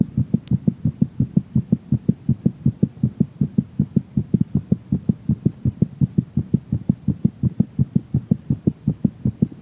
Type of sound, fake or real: real